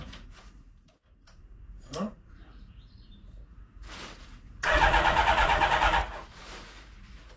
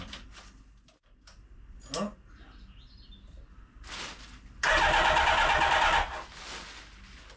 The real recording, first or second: second